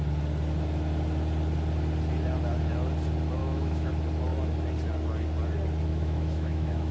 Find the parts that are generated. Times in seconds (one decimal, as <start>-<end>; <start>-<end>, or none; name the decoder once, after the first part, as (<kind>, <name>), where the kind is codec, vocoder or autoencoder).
3.4-3.9 (autoencoder, DAC-VAE); 5.9-6.9